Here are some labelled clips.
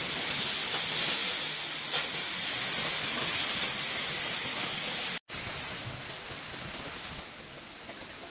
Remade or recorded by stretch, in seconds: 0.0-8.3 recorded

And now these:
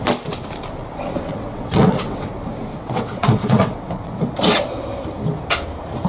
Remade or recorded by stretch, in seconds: 0.0-1.3 recorded; 1.3-2.3 remade; 2.3-2.7 recorded; 2.7-4.2 remade; 4.2-6.1 recorded